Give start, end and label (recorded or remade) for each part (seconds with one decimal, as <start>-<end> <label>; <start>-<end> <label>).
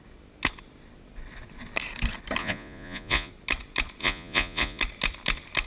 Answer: 0.0-2.4 recorded; 2.4-3.3 remade; 3.3-4.0 recorded; 4.0-4.8 remade; 4.8-5.7 recorded